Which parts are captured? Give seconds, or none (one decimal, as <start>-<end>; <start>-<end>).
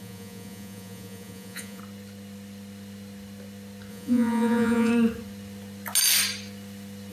1.8-3.9; 4.9-7.1